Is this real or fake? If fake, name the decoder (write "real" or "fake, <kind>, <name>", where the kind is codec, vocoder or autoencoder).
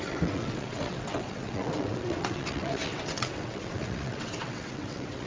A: fake, vocoder, WaveNeXt